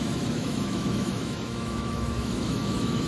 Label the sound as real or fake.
fake